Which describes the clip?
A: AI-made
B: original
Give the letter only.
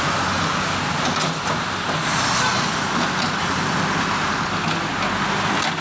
B